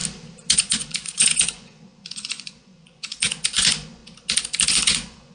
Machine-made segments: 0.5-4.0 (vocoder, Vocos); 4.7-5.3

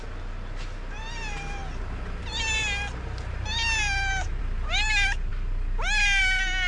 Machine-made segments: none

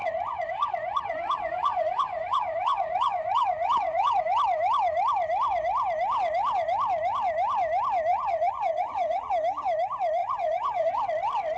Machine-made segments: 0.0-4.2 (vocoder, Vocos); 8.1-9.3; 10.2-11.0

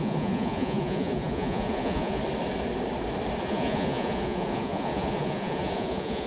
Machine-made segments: 0.0-2.2 (vocoder, Vocos); 3.4-6.3

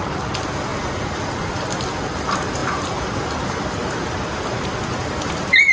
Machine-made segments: 0.7-1.5 (vocoder, Vocos)